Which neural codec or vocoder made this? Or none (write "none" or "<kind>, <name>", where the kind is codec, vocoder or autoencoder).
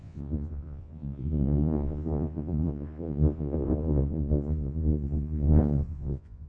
vocoder, Vocos